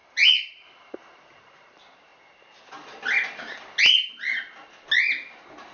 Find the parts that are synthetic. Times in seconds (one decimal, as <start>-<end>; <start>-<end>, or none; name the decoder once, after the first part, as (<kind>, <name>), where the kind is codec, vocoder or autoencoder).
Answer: none